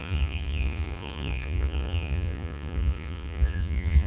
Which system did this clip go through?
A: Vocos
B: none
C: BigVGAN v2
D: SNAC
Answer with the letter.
A